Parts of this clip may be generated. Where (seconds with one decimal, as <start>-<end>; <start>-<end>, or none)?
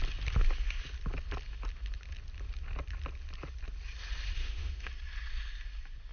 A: 4.4-4.9